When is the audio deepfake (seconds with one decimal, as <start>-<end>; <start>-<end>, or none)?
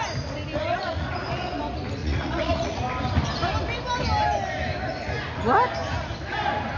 0.7-1.5; 2.0-2.8